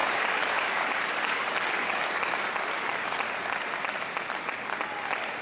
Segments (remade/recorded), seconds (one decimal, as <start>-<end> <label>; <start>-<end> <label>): 0.0-3.2 remade; 3.2-5.4 recorded